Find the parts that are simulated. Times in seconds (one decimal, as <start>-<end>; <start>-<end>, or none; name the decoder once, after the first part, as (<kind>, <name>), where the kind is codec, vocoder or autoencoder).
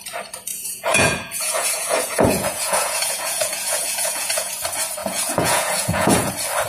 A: 0.5-4.5 (vocoder, Vocos); 5.0-6.3